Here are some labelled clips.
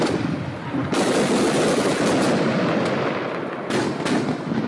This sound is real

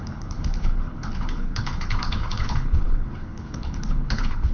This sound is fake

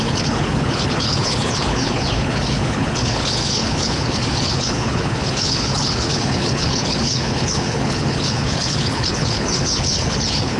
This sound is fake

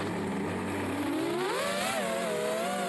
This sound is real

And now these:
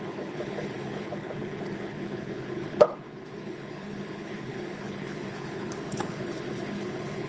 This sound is fake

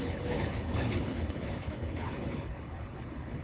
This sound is fake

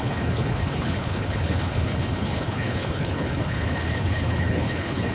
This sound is fake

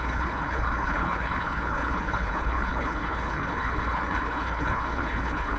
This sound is fake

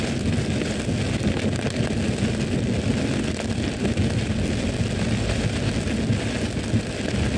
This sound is real